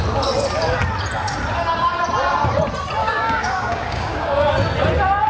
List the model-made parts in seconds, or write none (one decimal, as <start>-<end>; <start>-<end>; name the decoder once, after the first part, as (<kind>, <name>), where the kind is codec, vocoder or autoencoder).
3.0-4.5 (codec, DAC)